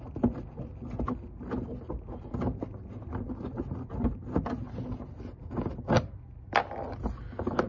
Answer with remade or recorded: recorded